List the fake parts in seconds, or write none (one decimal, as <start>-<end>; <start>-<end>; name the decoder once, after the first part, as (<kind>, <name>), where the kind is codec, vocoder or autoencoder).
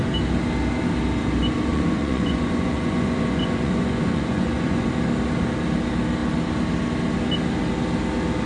1.7-4.9 (vocoder, Vocos)